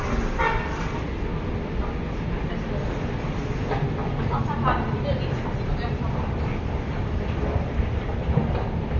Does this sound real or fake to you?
real